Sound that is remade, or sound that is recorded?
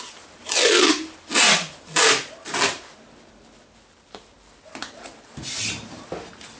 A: recorded